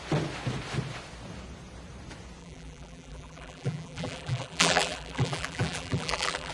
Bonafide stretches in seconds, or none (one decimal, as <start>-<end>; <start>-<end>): 0.0-2.4